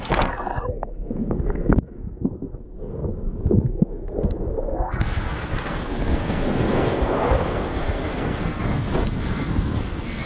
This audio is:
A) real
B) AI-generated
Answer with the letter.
B